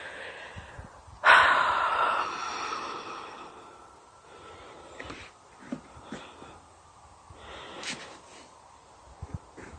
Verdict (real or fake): fake